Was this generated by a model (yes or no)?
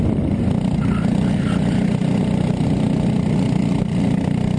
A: no